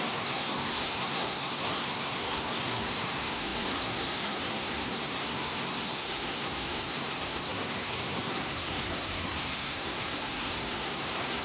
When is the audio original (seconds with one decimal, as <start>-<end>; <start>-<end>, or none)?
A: none